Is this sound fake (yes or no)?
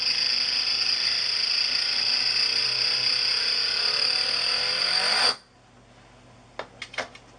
no